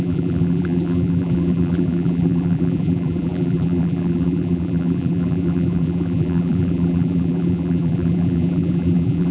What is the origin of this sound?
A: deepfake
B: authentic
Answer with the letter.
A